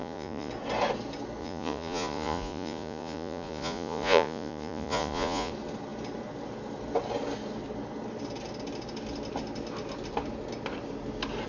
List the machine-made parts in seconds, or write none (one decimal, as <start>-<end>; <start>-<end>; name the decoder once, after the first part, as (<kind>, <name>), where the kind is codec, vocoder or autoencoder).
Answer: 0.0-0.5 (vocoder, Vocos); 1.4-5.5